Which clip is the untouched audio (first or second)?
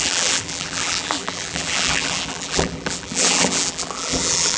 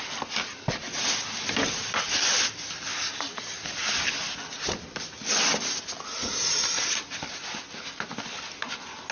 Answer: second